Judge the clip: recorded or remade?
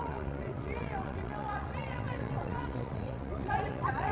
remade